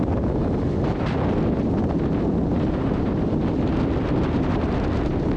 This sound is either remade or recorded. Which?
recorded